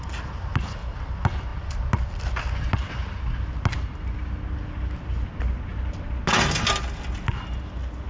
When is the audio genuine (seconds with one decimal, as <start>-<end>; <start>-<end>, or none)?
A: 0.0-8.1